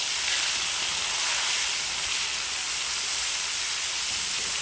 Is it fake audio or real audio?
real